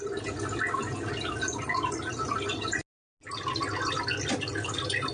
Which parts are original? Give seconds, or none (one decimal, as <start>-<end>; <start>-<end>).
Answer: 0.0-5.1